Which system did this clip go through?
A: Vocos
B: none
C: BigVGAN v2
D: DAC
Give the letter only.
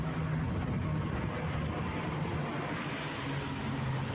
B